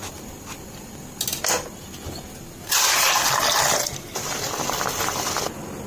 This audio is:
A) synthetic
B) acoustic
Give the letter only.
B